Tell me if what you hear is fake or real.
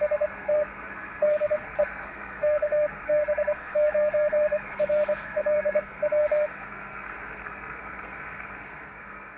fake